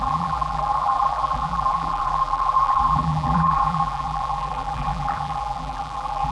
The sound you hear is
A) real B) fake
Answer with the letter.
B